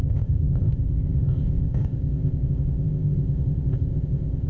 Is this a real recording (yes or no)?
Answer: no